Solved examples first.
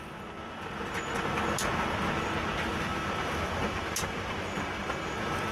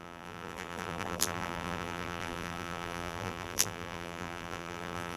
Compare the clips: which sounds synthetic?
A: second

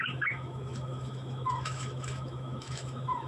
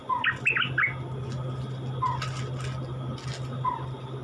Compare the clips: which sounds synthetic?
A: first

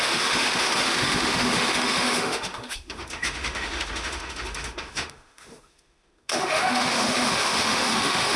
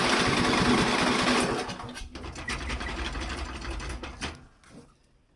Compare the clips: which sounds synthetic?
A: first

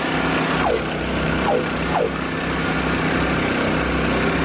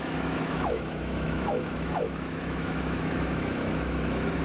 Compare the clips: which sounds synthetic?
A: second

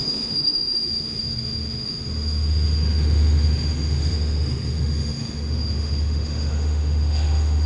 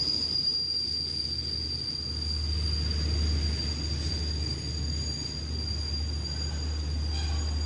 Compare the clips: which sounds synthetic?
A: first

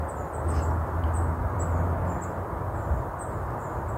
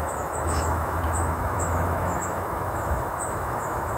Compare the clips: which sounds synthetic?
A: second